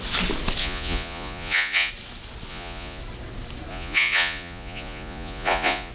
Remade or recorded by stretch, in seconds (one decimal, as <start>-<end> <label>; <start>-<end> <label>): 0.0-0.6 recorded; 0.6-1.9 remade; 1.9-2.5 recorded; 2.5-3.0 remade; 3.0-3.7 recorded; 3.7-5.9 remade